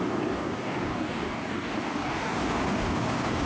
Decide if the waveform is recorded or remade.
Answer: remade